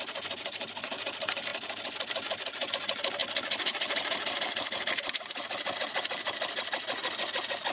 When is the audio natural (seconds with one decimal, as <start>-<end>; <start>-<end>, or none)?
0.0-7.7